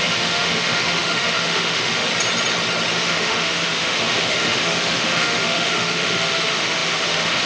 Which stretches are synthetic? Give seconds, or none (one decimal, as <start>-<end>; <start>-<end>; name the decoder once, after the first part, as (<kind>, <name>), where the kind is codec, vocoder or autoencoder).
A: 0.0-2.1 (autoencoder, DAC-VAE); 2.9-7.5